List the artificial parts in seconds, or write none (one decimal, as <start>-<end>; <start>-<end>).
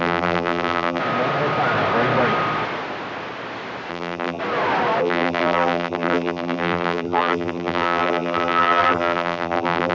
0.0-1.0; 3.9-4.4; 5.0-9.9